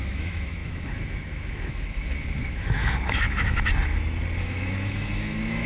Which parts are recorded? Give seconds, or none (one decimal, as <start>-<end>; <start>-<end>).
3.7-4.4

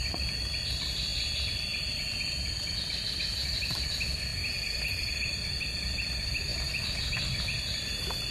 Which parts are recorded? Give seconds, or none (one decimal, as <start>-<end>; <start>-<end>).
0.0-8.3

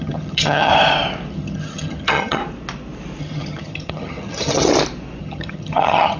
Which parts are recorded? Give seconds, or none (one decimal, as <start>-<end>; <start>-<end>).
0.7-1.3; 2.4-3.2; 4.7-5.2

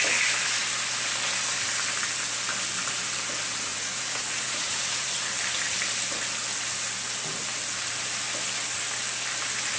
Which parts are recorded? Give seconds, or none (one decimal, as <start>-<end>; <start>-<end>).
0.0-3.7; 5.3-9.8